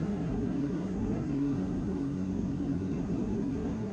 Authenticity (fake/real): fake